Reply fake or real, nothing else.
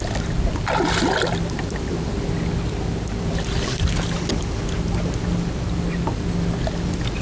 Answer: real